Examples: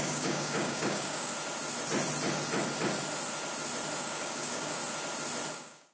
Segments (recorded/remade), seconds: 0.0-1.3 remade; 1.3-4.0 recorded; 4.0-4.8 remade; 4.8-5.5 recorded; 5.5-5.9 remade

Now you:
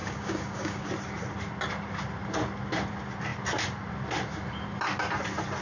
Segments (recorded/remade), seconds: 0.0-0.9 remade; 0.9-5.6 recorded

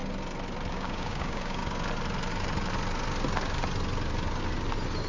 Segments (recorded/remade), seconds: 0.0-0.7 recorded; 0.7-1.6 remade; 1.6-5.1 recorded

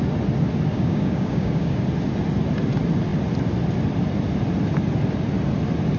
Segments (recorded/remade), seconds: 0.0-0.7 recorded; 0.7-1.8 remade; 1.8-6.0 recorded

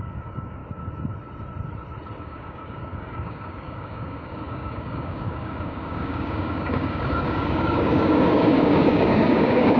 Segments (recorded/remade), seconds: 0.0-0.6 remade; 0.6-2.2 recorded; 2.2-9.8 remade

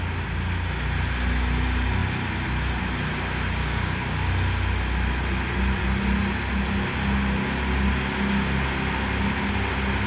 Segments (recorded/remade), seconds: 0.0-3.6 recorded; 3.6-4.3 remade; 4.3-10.1 recorded